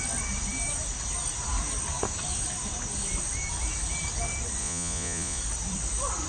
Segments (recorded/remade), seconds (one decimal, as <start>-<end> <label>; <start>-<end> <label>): 0.0-4.6 recorded; 4.6-5.4 remade; 5.4-6.3 recorded

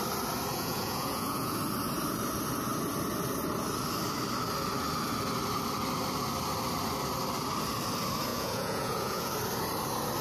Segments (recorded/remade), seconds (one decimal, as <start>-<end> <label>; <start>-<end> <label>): 0.0-0.5 recorded; 0.5-1.6 remade; 1.6-8.3 recorded; 8.3-9.3 remade; 9.3-10.2 recorded